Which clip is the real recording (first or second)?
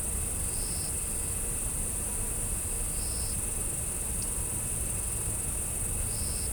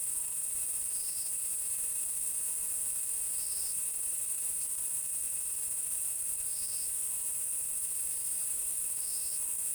first